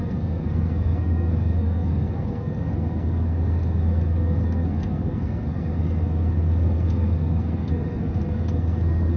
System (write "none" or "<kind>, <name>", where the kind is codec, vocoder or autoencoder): codec, SNAC